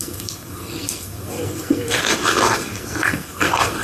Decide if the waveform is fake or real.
fake